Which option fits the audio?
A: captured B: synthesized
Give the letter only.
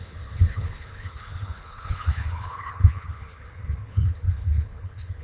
B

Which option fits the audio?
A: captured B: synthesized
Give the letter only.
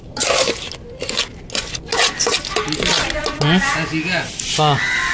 A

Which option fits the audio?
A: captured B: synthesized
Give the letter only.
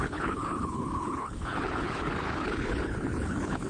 B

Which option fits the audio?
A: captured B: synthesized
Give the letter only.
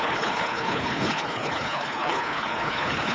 B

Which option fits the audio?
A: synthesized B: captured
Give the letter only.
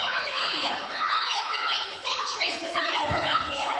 A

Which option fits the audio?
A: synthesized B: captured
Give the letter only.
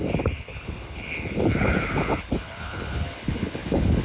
A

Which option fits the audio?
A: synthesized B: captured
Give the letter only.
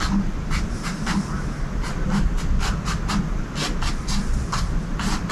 B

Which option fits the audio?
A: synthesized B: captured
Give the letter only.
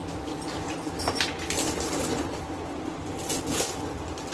B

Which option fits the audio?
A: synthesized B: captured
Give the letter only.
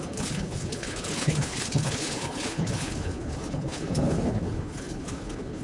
A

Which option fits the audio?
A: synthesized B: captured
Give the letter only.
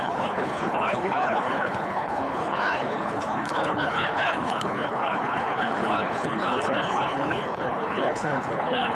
A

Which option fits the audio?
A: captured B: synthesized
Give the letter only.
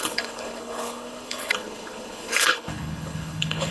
B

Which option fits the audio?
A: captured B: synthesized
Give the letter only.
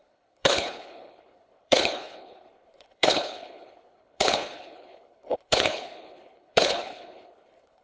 B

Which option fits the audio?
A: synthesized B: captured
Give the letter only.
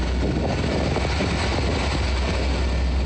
B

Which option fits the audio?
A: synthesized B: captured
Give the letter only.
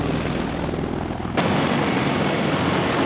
B